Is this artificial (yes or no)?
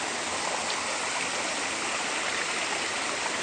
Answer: no